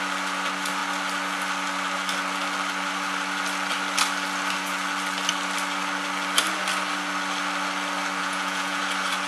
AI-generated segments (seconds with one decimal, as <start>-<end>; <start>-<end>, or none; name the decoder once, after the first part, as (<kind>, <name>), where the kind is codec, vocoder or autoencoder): 8.2-8.8 (vocoder, Vocos)